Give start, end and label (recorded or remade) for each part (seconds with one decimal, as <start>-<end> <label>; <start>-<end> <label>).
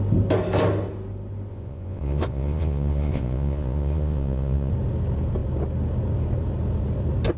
0.0-1.5 recorded; 1.5-4.7 remade; 4.7-7.4 recorded